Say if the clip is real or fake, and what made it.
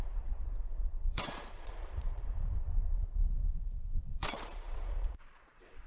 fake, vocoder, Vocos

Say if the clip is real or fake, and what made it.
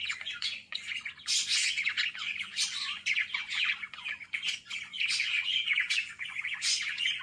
fake, vocoder, Vocos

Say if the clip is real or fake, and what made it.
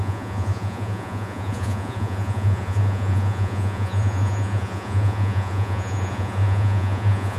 fake, vocoder, Vocos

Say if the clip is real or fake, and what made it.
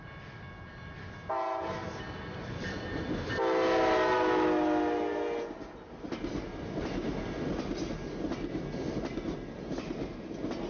real